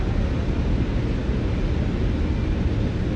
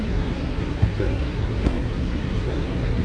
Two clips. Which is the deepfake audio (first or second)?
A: second